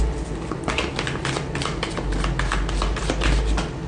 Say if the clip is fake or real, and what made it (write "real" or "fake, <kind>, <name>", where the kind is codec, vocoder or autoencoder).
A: real